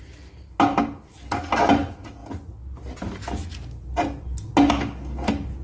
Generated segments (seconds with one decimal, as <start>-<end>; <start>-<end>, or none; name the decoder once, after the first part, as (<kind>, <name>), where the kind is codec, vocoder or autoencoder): none